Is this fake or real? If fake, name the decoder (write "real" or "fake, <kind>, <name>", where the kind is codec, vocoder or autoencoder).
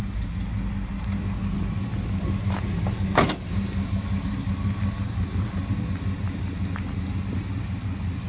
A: real